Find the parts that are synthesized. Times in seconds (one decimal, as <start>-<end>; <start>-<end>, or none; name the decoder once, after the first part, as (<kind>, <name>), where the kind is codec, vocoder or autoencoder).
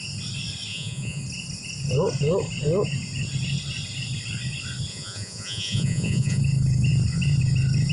0.7-1.2 (vocoder, Vocos); 4.9-6.4